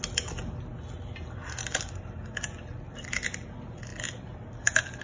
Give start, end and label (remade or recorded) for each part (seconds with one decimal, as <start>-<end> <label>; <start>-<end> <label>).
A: 0.0-5.0 recorded